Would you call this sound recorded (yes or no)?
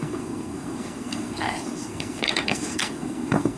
no